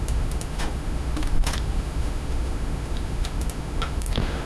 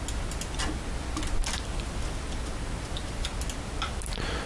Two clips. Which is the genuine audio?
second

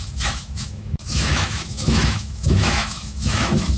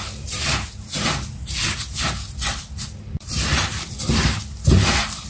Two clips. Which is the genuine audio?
second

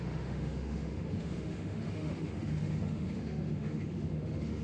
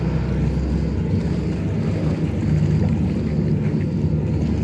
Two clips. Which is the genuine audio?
second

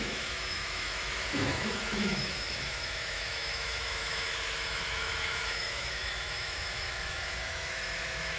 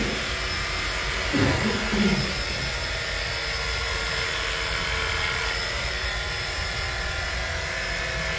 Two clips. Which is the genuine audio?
second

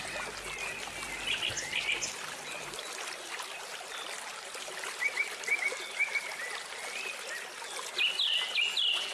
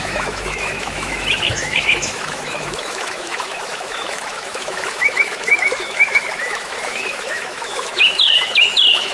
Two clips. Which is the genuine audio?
first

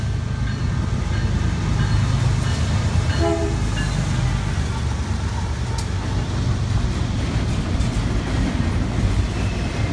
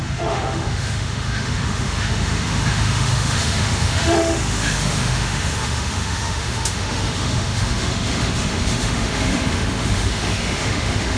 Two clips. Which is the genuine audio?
first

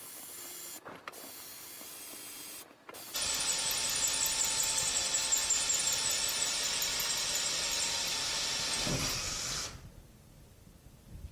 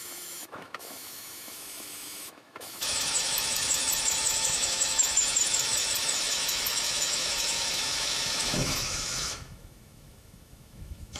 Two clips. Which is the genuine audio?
first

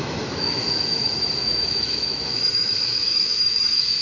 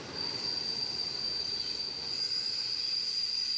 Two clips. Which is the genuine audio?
second